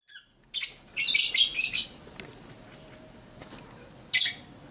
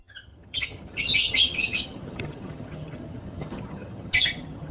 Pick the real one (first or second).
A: first